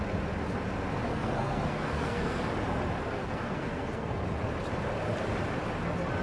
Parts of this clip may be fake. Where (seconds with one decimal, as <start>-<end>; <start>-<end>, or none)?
1.1-2.5; 3.2-4.2